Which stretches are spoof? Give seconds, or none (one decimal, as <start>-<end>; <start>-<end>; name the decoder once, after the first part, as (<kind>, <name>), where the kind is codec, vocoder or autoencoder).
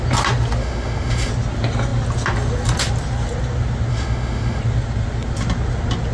0.6-1.3 (autoencoder, DAC-VAE); 3.9-4.6